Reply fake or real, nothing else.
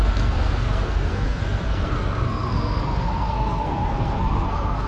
fake